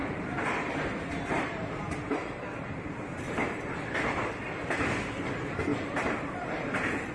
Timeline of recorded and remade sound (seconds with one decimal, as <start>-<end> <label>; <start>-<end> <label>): 0.0-4.3 remade; 4.3-5.7 recorded; 5.7-7.1 remade